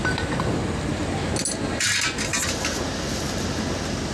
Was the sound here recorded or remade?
recorded